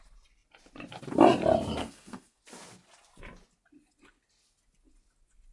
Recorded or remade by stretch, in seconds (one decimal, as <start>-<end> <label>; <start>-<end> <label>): 0.0-1.8 recorded; 1.8-2.4 remade; 2.4-5.5 recorded